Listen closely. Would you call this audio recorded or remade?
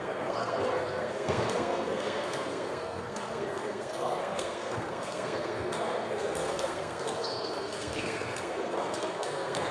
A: remade